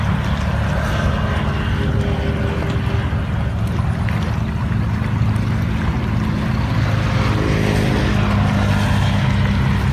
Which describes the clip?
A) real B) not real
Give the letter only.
A